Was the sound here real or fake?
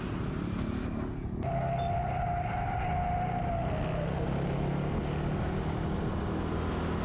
real